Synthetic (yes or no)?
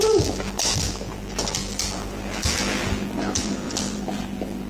yes